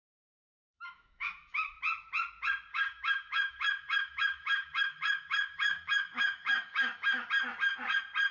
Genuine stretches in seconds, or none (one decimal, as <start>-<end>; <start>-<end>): 1.8-2.7; 7.3-8.3